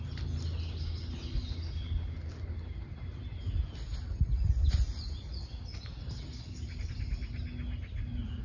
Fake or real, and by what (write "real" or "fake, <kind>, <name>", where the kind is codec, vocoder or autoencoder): real